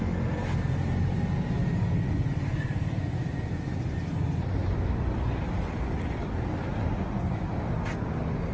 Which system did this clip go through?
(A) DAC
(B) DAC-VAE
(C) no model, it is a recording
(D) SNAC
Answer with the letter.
C